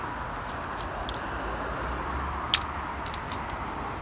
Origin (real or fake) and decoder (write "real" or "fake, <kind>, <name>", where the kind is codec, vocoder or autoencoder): real